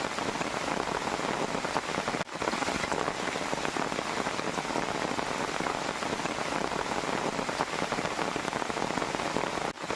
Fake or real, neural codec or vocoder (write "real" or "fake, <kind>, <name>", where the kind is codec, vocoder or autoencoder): real